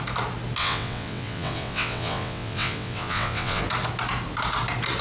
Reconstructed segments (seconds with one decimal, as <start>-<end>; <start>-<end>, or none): 0.6-3.6